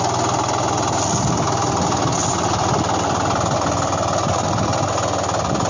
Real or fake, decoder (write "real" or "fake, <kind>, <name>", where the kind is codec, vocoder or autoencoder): real